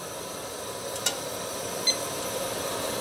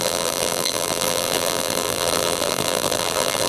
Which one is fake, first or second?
second